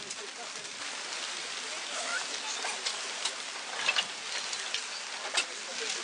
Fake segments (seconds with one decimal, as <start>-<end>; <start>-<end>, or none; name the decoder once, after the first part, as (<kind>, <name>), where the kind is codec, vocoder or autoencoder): none

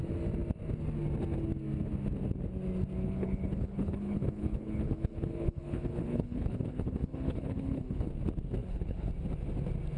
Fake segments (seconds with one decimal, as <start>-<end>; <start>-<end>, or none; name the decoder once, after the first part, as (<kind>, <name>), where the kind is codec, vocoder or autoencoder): 3.0-8.1 (codec, HILCodec); 8.6-9.1

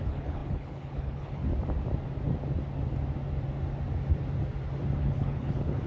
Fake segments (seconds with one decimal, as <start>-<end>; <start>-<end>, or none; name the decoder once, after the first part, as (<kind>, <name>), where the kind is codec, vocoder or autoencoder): 0.0-1.5 (codec, HILCodec); 5.0-5.9

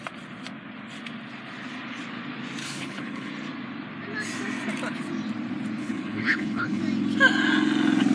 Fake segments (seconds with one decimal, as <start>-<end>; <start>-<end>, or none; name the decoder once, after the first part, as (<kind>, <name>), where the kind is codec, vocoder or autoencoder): 2.6-3.3 (codec, HILCodec); 5.8-6.8